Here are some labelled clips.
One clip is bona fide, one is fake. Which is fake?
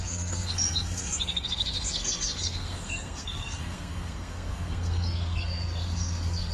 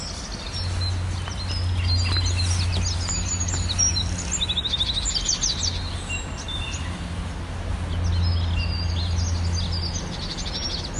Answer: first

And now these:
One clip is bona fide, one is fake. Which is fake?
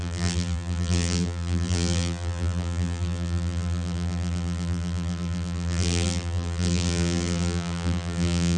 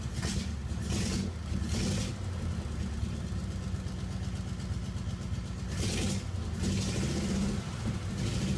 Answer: first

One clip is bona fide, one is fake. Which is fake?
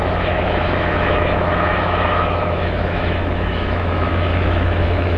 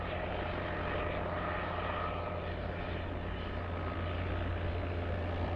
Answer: first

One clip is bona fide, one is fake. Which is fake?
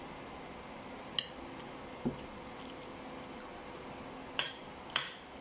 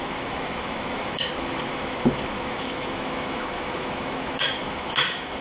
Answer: second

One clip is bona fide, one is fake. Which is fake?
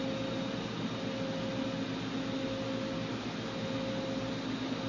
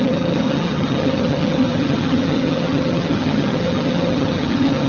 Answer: second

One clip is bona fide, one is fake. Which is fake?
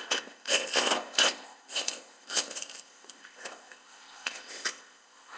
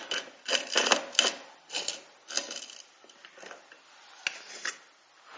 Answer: first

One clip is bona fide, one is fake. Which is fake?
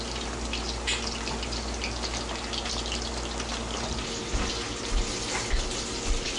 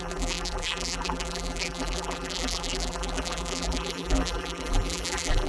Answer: second